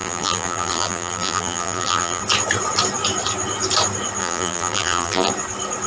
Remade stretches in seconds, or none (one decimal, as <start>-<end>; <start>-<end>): 0.0-2.2; 4.2-5.3